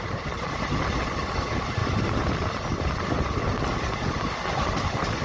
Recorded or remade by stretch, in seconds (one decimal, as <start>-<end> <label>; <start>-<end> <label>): 0.0-5.2 recorded